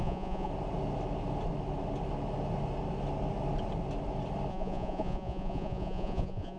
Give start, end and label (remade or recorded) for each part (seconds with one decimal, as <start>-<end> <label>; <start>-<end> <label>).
0.0-0.5 remade; 0.5-4.5 recorded; 4.5-6.6 remade